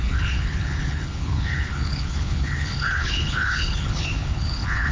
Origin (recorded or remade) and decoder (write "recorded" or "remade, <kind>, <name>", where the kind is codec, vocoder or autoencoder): remade, codec, HILCodec